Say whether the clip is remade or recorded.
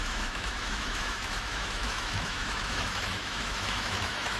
remade